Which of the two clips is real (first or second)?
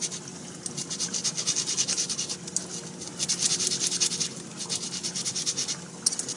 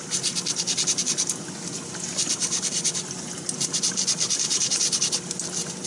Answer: first